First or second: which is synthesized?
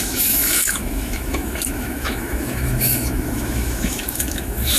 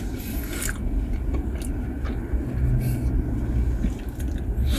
first